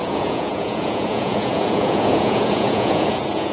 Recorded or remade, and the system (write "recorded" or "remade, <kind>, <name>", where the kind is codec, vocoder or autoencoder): remade, vocoder, Vocos